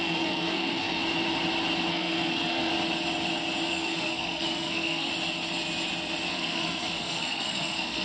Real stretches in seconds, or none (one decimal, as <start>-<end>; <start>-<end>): 1.0-1.9; 2.7-3.7; 5.1-6.3